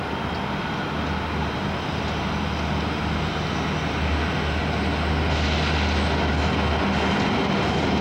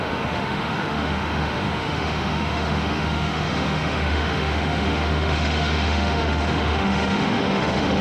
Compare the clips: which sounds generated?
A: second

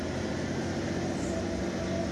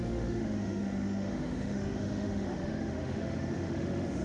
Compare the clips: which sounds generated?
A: second